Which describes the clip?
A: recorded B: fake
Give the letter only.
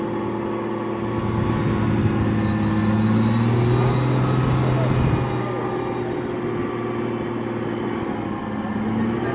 A